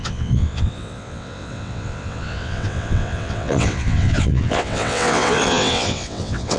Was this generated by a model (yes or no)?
yes